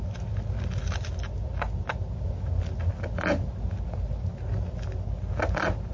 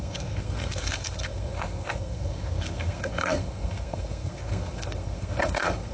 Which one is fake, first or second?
second